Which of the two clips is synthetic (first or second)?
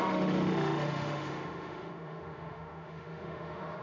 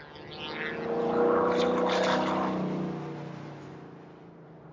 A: first